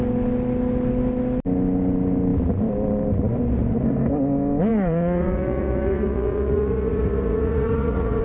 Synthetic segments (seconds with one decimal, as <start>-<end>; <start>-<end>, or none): 4.7-8.2